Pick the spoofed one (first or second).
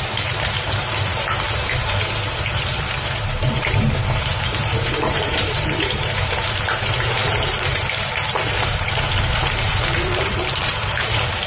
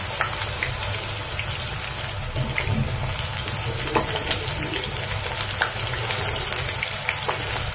first